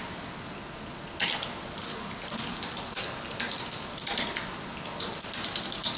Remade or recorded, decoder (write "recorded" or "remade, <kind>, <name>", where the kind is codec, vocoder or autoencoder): recorded